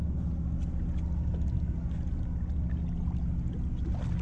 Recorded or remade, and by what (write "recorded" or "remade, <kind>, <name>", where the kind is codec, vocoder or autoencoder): recorded